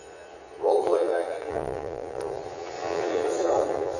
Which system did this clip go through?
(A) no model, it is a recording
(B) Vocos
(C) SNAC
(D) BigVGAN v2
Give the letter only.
B